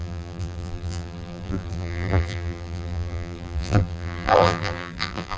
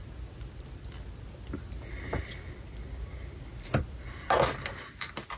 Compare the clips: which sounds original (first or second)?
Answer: second